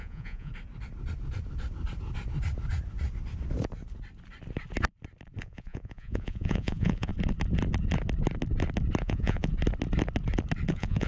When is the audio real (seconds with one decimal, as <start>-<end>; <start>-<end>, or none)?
0.5-5.4; 7.1-9.0; 9.5-10.7